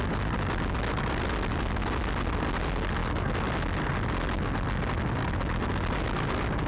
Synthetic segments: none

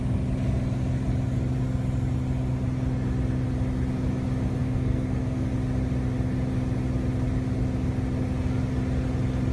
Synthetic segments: 4.6-5.5 (codec, SNAC)